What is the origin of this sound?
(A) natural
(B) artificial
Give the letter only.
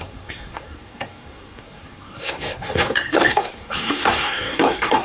B